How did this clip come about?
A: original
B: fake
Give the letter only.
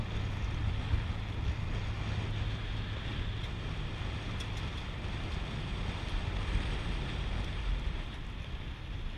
A